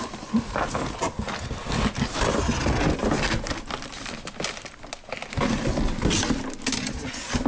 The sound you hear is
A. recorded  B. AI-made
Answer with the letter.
A